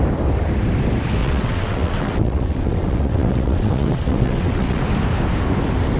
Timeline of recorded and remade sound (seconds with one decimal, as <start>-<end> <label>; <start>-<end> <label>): 0.0-1.2 recorded; 1.2-4.8 remade; 4.8-6.0 recorded